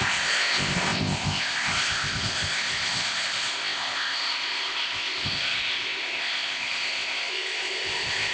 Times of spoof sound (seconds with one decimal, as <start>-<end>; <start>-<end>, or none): 0.0-8.3